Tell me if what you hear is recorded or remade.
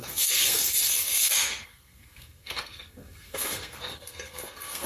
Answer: remade